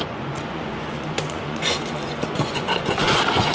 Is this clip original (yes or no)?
no